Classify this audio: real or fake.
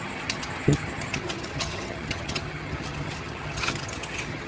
fake